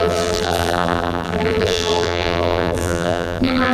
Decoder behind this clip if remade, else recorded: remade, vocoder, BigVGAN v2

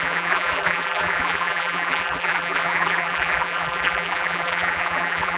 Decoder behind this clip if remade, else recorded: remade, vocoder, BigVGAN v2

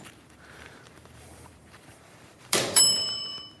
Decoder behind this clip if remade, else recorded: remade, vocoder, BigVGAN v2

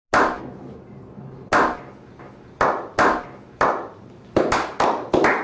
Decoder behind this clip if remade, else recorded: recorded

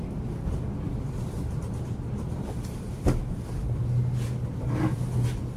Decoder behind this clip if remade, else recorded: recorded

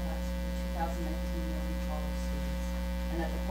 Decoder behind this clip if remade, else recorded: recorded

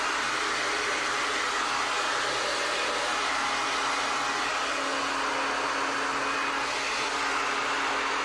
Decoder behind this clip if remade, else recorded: recorded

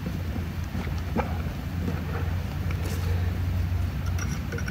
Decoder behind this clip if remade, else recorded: recorded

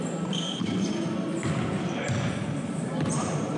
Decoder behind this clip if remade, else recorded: recorded